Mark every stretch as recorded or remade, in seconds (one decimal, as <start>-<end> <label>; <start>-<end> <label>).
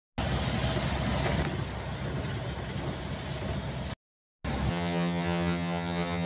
0.0-4.7 recorded; 4.7-6.3 remade